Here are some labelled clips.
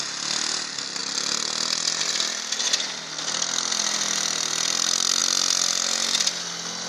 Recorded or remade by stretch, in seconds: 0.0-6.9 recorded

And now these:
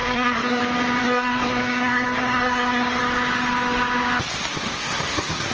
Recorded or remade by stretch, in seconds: 0.0-0.6 remade; 0.6-1.0 recorded; 1.0-3.0 remade; 3.0-4.5 recorded; 4.5-5.5 remade

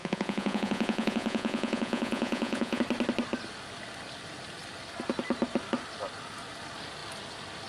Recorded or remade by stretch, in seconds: 0.0-2.8 remade; 2.8-7.7 recorded

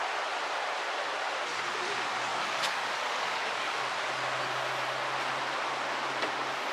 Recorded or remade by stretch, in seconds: 0.0-2.3 recorded; 2.3-3.8 remade; 3.8-6.7 recorded